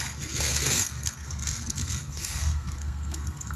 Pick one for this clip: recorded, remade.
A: remade